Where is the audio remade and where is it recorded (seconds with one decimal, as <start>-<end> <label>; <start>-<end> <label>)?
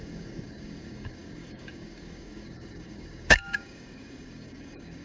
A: 0.0-5.0 remade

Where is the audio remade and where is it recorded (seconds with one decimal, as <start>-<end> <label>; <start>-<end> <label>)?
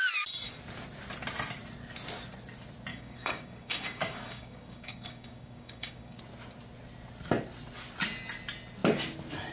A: 0.0-2.9 recorded; 2.9-6.2 remade; 6.2-9.5 recorded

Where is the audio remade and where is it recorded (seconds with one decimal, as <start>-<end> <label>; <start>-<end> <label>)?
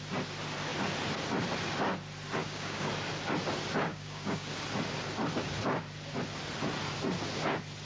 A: 0.0-2.4 recorded; 2.4-2.9 remade; 2.9-3.9 recorded; 3.9-4.5 remade; 4.5-7.9 recorded